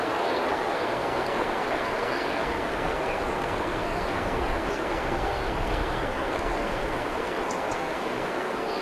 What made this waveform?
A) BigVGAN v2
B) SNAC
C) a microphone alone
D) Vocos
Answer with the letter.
B